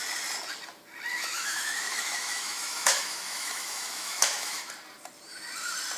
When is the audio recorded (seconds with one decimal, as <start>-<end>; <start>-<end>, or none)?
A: 0.0-1.1; 4.7-6.0